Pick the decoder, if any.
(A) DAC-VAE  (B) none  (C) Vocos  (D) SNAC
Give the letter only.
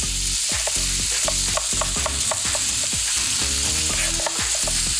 B